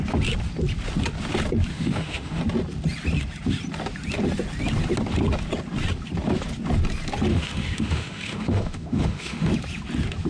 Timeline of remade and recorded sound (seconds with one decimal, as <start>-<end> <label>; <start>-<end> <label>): 0.0-1.7 recorded; 1.7-2.4 remade; 2.4-7.3 recorded; 7.3-9.5 remade; 9.5-10.3 recorded